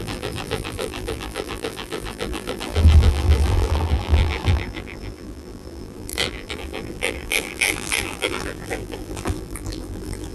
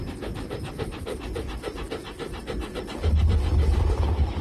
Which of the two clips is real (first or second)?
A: second